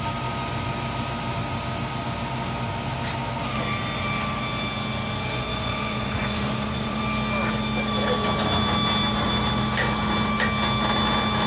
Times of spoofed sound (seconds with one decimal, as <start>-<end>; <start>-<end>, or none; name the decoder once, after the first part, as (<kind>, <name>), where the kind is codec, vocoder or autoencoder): 5.5-7.0 (vocoder, Vocos)

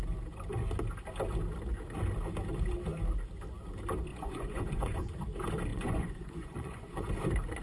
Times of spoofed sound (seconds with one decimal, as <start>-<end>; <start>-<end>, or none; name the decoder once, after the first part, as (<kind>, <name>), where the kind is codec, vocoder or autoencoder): 4.1-5.1 (vocoder, Vocos); 5.7-7.1

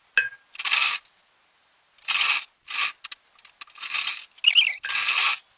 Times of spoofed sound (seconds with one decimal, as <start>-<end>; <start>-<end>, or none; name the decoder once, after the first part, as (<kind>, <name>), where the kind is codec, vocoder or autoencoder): none

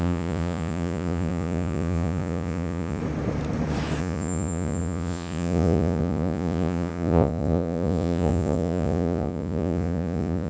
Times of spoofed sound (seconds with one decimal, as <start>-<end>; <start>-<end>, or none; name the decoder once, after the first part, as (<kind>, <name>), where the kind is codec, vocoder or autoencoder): 0.0-3.0 (vocoder, Vocos); 4.0-10.5

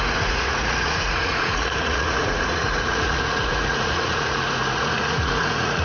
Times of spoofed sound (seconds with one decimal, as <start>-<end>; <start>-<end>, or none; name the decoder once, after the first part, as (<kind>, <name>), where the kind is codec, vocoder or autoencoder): 0.0-5.8 (vocoder, Vocos)

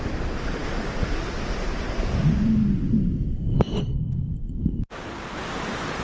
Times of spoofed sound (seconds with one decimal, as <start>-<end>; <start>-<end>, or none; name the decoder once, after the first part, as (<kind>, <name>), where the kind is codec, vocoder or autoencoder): none